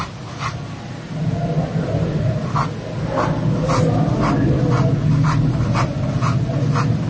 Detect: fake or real real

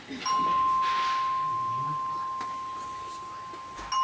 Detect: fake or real real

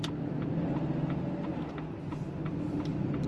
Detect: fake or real real